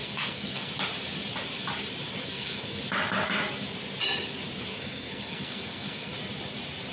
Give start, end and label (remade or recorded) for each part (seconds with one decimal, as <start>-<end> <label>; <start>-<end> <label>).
0.0-0.7 remade; 0.7-2.2 recorded; 2.2-2.8 remade; 2.8-4.7 recorded; 4.7-6.1 remade; 6.1-6.9 recorded